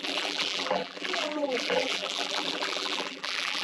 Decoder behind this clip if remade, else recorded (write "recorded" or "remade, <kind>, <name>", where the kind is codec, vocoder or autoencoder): remade, vocoder, BigVGAN v2